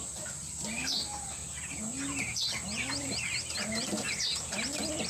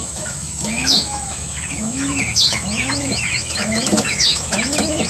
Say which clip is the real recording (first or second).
first